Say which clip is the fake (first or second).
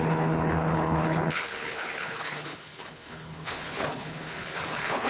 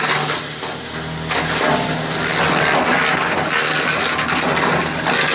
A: first